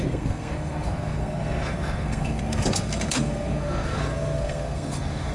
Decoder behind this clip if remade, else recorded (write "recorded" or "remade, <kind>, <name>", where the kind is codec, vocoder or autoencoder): remade, codec, SNAC